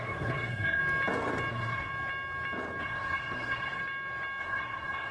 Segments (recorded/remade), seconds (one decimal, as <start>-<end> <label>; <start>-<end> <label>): 0.0-0.8 remade; 0.8-1.5 recorded; 1.5-1.9 remade; 1.9-2.8 recorded; 2.8-3.8 remade; 3.8-4.4 recorded; 4.4-5.1 remade